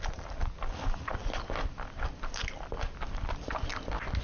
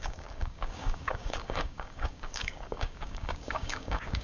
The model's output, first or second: second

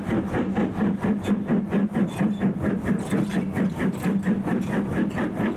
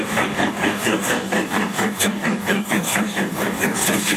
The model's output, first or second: second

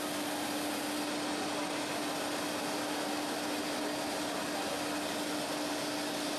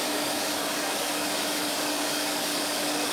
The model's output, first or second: second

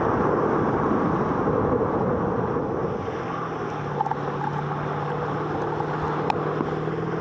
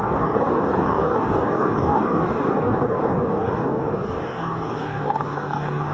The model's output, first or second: second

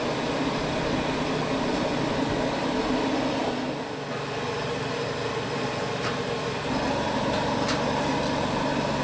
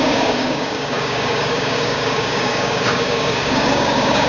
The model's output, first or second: second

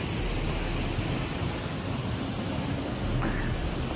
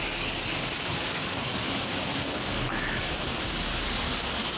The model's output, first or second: second